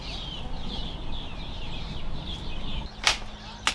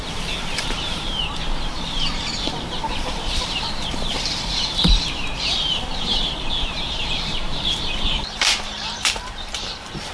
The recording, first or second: first